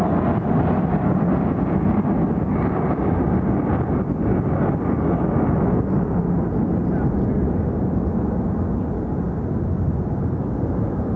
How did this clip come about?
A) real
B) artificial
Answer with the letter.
A